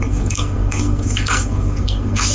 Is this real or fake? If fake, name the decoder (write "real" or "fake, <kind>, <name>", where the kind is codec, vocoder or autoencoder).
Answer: fake, codec, SNAC